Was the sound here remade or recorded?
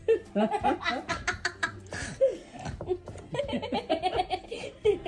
remade